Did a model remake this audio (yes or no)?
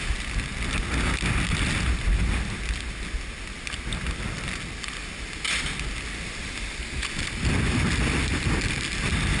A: no